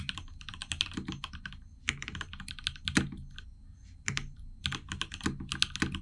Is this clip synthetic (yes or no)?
no